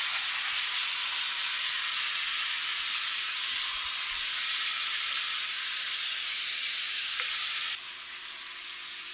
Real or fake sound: real